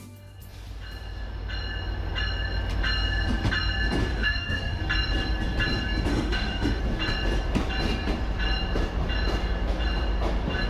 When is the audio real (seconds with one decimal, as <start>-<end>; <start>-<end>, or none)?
0.0-4.1; 4.8-6.1; 6.8-10.7